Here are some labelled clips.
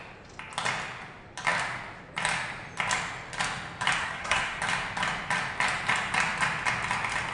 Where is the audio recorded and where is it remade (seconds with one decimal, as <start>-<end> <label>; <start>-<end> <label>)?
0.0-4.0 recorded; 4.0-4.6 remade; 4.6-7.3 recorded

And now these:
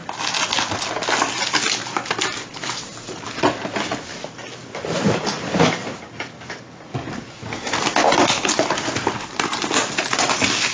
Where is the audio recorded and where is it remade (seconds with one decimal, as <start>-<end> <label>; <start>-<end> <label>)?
0.0-10.7 recorded

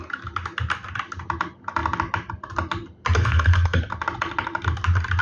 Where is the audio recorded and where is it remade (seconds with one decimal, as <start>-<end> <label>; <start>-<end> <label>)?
0.0-3.2 recorded; 3.2-3.8 remade; 3.8-5.2 recorded

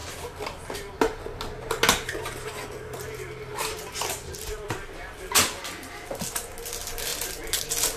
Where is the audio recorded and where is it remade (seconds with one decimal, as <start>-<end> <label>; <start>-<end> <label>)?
0.0-3.5 recorded; 3.5-4.7 remade; 4.7-7.1 recorded; 7.1-7.6 remade; 7.6-8.0 recorded

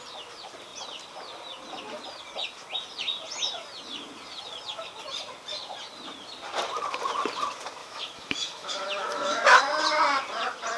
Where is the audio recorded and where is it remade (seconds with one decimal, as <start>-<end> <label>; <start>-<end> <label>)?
0.0-7.8 recorded; 7.8-9.6 remade; 9.6-10.8 recorded